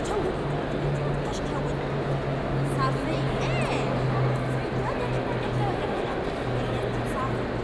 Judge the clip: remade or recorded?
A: recorded